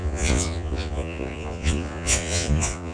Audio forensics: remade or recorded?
remade